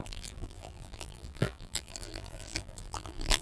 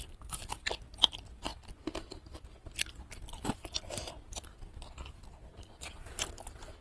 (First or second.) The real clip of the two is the second